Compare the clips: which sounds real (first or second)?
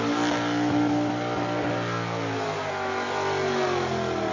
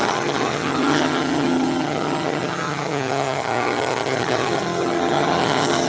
first